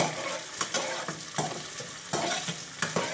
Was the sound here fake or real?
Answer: real